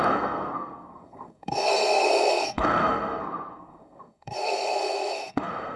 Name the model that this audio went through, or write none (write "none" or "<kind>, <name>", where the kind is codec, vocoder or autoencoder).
codec, SNAC